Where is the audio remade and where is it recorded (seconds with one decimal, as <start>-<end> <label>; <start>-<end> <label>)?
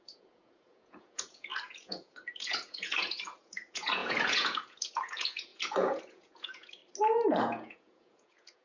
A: 0.0-6.8 remade; 6.8-7.4 recorded; 7.4-8.6 remade